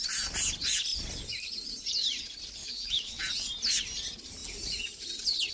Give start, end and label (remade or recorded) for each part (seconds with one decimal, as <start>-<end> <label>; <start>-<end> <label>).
0.0-2.6 recorded; 2.6-3.2 remade; 3.2-5.5 recorded

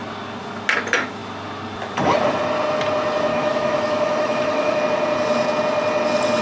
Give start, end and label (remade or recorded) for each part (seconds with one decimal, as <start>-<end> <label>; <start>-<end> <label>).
0.0-3.3 recorded; 3.3-4.8 remade; 4.8-6.4 recorded

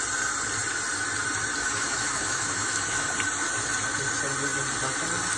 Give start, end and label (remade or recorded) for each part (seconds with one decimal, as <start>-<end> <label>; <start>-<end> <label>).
0.0-1.6 recorded; 1.6-3.1 remade; 3.1-5.4 recorded